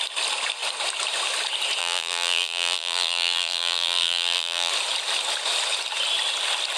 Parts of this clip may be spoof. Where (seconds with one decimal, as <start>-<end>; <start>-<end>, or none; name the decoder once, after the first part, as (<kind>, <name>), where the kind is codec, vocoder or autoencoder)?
1.8-4.7 (vocoder, BigVGAN v2)